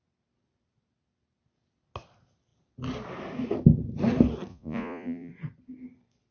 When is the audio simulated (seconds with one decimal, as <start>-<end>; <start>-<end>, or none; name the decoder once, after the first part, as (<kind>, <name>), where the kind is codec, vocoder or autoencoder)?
4.5-5.3 (vocoder, Vocos)